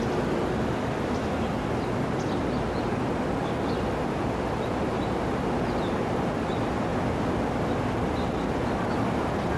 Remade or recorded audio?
recorded